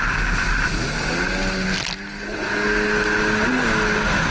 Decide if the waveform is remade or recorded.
recorded